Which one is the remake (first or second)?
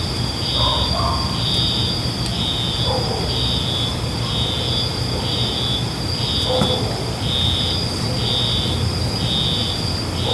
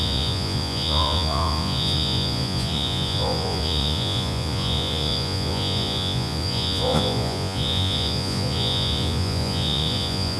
second